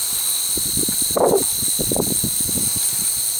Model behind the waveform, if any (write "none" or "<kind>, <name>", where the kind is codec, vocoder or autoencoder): none